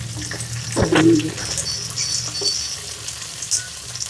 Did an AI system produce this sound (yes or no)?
no